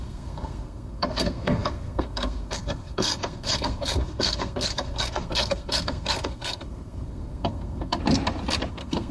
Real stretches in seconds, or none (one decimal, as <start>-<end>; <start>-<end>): 8.0-8.7